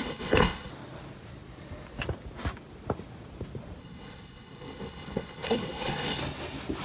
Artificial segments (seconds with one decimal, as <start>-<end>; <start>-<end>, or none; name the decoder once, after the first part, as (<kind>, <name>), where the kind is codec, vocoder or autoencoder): 0.0-0.7 (codec, HILCodec); 3.8-6.2